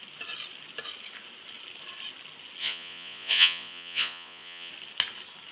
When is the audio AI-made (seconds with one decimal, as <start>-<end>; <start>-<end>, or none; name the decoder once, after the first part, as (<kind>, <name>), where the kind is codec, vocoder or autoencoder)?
2.6-4.7 (vocoder, Vocos)